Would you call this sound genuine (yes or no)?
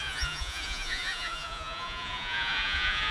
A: no